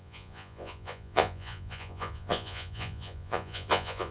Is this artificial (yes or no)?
yes